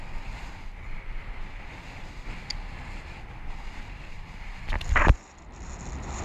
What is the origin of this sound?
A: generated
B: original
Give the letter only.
B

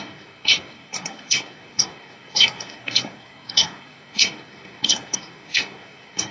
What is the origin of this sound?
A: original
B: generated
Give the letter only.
B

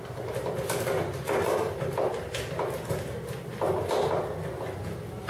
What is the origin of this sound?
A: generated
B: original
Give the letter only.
B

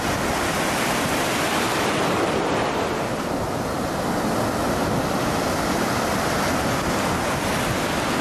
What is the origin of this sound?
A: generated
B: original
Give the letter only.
B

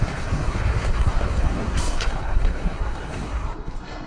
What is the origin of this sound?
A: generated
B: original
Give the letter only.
A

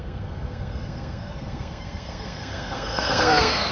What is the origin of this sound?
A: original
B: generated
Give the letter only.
B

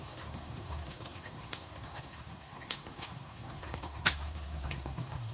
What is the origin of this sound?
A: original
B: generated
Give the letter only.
B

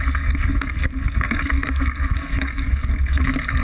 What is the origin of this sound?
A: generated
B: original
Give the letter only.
A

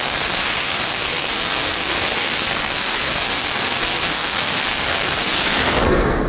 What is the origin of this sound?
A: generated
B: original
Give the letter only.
A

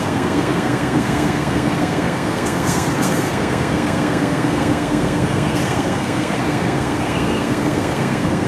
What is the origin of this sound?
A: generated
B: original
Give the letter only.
A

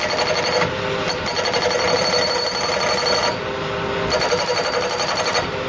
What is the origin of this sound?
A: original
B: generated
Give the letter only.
A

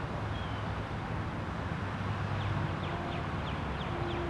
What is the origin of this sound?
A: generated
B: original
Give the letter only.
B